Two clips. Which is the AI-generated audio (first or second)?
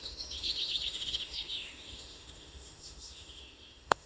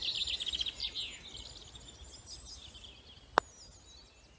first